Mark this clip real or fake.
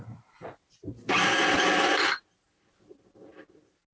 real